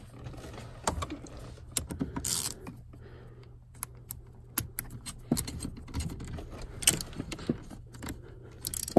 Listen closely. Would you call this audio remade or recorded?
recorded